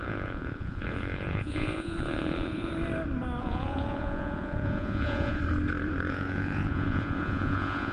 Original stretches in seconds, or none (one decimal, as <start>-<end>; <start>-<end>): 2.7-3.4; 5.4-6.1